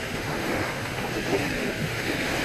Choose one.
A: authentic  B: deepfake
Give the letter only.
B